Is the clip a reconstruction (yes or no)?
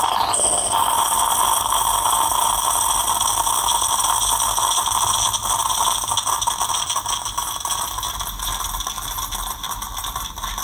no